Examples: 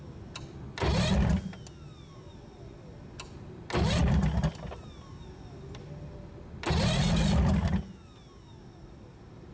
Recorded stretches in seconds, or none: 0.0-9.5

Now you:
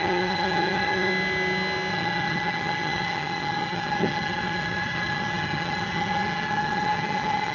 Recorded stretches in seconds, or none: 1.1-1.9

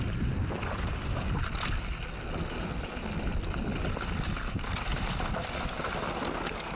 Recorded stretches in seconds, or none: 0.0-6.8

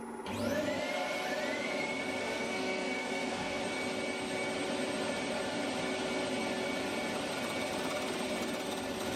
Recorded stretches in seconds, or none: 0.0-2.2; 3.6-9.2

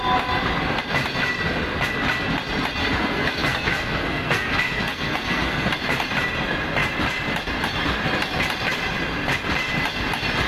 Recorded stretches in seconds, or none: 0.0-2.8; 5.7-10.5

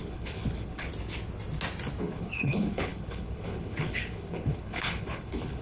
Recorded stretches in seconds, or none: 0.9-2.0

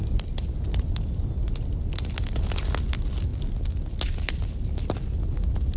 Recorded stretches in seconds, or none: 0.0-5.8